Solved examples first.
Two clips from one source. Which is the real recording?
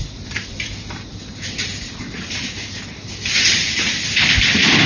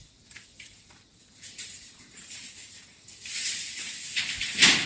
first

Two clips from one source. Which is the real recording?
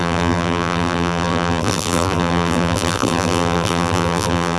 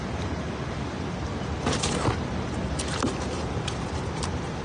second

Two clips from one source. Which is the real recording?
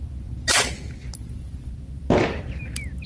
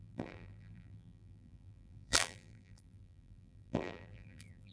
first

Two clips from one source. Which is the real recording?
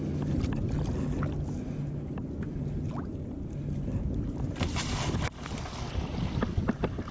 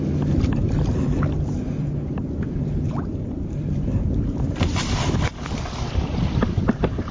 first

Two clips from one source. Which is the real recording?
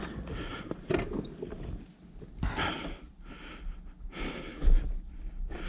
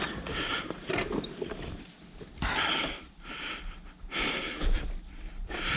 first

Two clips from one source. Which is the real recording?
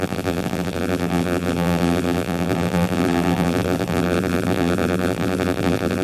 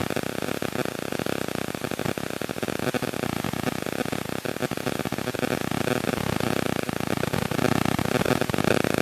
second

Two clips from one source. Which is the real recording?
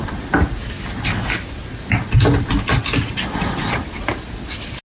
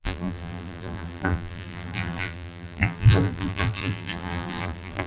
first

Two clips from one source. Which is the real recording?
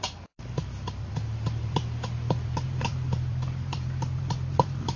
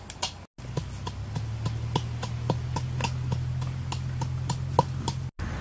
second